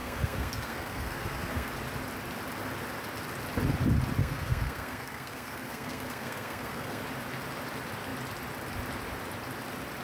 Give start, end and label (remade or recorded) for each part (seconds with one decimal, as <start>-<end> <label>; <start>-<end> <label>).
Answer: 0.0-1.7 remade; 1.7-4.2 recorded; 4.2-7.0 remade; 7.0-10.0 recorded